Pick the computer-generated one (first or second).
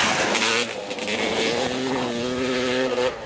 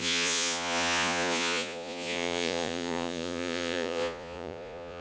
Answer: second